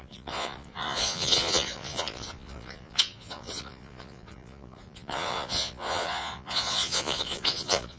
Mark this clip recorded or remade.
remade